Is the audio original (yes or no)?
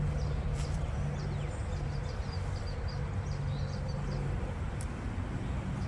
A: yes